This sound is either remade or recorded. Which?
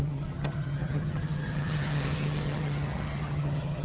remade